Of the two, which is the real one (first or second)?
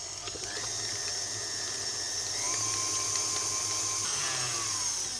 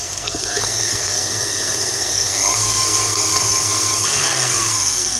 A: first